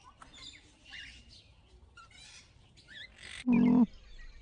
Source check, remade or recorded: recorded